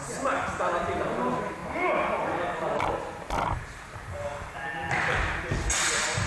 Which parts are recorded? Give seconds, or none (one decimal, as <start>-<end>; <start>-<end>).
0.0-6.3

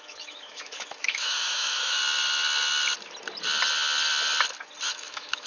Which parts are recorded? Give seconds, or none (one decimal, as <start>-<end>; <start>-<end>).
2.0-4.9

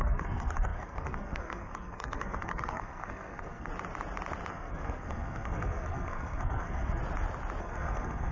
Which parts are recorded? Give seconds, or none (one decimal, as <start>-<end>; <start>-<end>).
3.7-4.5; 7.0-7.6

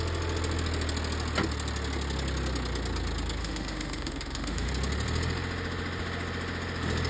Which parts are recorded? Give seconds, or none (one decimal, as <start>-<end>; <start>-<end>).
0.0-3.4; 4.7-7.1

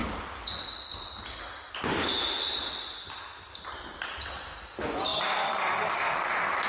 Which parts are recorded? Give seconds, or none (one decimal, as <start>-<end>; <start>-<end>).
0.0-6.7

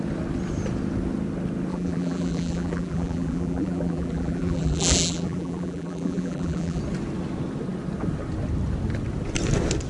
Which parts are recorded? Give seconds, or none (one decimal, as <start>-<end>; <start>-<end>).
0.0-1.7; 6.8-9.9